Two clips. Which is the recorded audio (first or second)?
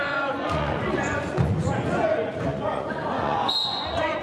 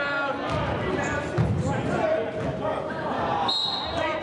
second